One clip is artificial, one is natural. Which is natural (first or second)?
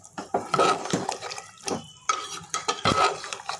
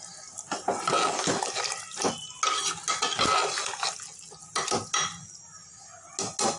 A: second